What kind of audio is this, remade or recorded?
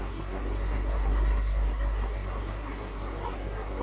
remade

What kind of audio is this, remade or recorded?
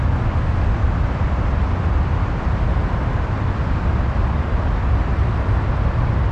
remade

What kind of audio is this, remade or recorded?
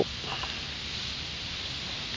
recorded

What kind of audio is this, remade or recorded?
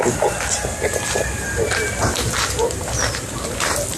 recorded